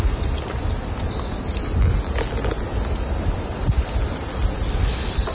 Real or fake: real